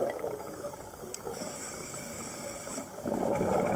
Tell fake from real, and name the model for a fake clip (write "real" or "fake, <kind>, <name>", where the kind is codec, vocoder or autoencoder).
fake, codec, DAC